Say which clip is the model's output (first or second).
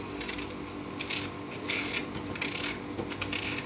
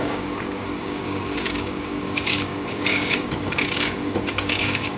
second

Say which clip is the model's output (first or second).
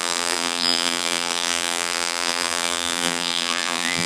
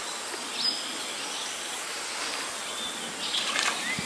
first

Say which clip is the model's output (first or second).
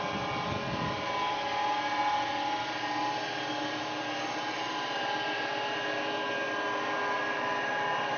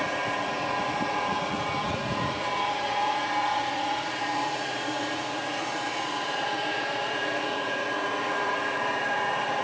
second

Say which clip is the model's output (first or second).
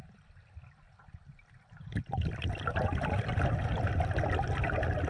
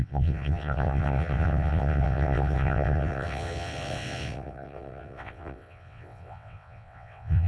second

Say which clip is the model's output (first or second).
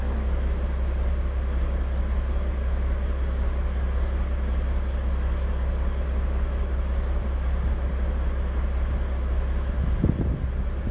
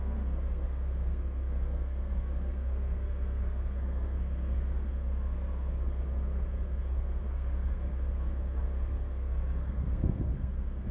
second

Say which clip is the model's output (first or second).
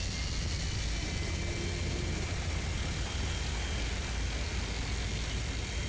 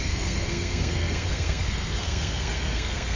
second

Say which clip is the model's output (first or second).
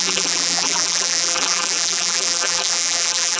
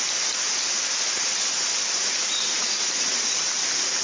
first